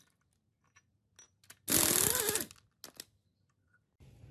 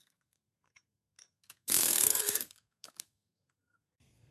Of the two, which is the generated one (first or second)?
second